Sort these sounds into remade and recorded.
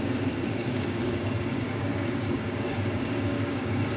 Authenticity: remade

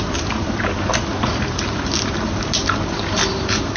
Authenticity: recorded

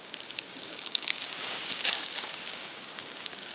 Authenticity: remade